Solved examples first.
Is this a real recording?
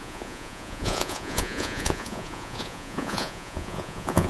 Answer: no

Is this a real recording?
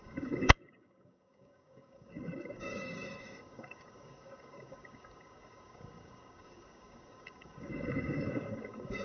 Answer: no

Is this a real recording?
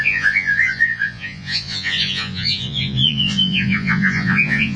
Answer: no